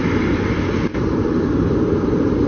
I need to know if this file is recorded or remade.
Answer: recorded